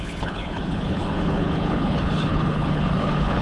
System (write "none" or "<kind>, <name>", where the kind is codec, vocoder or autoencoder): codec, HILCodec